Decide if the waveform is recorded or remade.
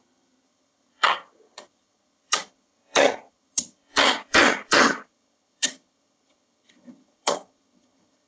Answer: remade